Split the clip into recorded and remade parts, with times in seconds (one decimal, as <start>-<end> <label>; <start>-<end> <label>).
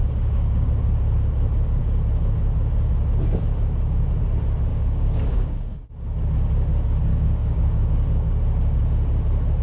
0.0-0.7 remade; 0.7-4.7 recorded; 4.7-5.9 remade; 5.9-7.1 recorded; 7.1-8.4 remade; 8.4-9.6 recorded